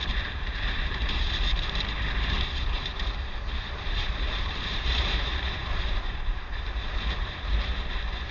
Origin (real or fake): fake